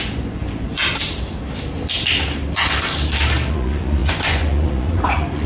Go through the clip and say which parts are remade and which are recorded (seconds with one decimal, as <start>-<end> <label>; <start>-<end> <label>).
0.0-0.7 remade; 0.7-3.5 recorded; 3.5-5.5 remade